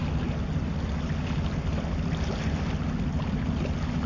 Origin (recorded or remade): recorded